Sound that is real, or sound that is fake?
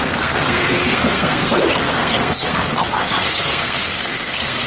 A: fake